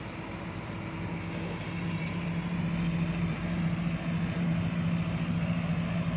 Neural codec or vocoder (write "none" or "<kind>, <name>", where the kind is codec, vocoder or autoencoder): none